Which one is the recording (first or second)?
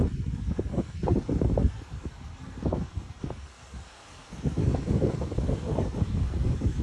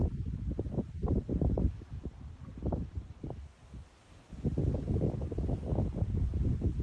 second